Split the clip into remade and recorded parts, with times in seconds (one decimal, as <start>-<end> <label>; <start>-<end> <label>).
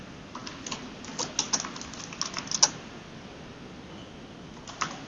0.0-5.1 recorded